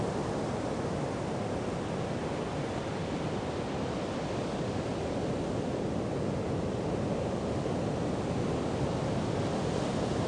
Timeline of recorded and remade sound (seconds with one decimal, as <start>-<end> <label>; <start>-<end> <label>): 0.0-10.3 recorded